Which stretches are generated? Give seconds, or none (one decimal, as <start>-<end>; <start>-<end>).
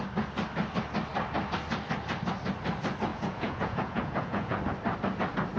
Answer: 3.1-4.6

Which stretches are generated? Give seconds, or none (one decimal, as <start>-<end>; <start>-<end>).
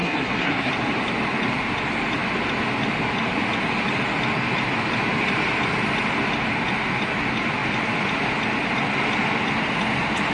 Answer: 0.0-0.7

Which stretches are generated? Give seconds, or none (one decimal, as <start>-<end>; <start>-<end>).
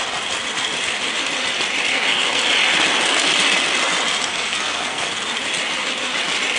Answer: 1.9-2.4; 4.3-5.1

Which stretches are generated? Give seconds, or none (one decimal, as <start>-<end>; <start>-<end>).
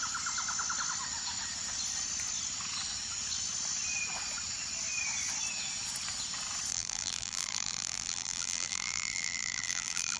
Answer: 6.7-10.2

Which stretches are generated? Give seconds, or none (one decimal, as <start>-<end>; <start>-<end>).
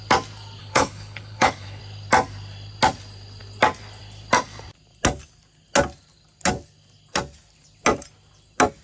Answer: 0.6-1.8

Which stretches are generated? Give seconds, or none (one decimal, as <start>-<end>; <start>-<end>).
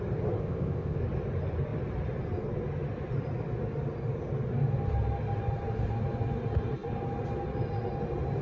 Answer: 0.4-1.0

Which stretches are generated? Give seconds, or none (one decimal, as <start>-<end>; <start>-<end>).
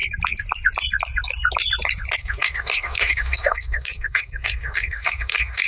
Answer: 2.2-5.7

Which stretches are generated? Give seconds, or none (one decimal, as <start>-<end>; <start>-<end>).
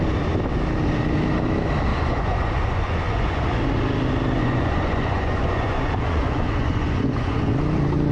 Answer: 1.9-3.6; 4.4-7.5